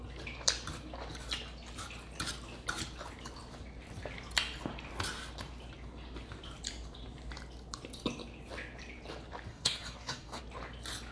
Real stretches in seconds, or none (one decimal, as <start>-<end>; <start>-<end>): 0.0-9.5; 10.4-11.1